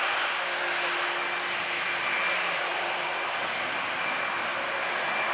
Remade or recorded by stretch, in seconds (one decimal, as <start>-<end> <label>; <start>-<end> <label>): 0.0-5.3 recorded